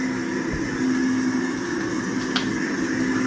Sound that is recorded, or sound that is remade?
recorded